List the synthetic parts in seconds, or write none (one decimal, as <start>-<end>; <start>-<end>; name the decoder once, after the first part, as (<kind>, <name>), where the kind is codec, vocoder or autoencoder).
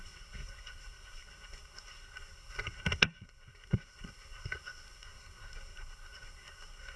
0.0-7.0 (codec, SNAC)